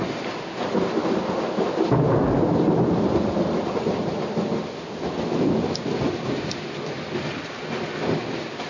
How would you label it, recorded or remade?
recorded